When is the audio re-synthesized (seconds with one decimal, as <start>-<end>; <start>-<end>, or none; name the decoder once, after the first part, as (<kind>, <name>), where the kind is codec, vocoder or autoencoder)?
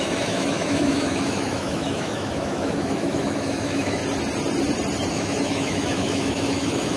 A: 0.0-4.0 (autoencoder, DAC-VAE); 5.1-7.0